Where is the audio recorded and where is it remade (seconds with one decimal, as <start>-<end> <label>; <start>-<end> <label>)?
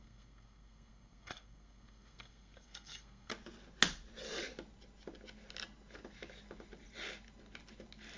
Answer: 0.0-3.3 remade; 3.3-8.2 recorded